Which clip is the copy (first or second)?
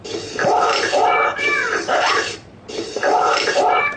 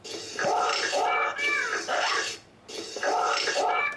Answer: first